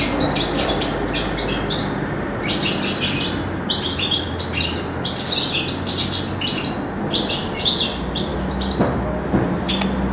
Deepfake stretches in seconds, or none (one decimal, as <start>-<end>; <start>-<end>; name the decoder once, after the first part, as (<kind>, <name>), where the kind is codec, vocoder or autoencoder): none